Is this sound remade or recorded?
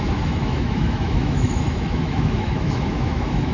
remade